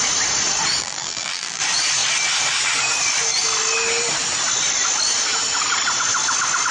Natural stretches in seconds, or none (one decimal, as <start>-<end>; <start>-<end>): 0.0-0.8; 1.6-6.7